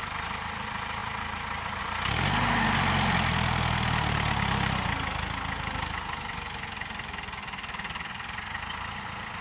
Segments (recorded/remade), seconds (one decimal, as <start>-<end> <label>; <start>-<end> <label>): 0.0-1.0 recorded; 1.0-1.8 remade; 1.8-9.4 recorded